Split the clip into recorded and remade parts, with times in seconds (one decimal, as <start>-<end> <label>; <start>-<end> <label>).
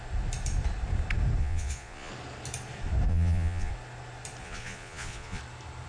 0.0-1.4 recorded; 1.4-2.1 remade; 2.1-3.1 recorded; 3.1-3.7 remade; 3.7-4.4 recorded; 4.4-5.4 remade; 5.4-5.9 recorded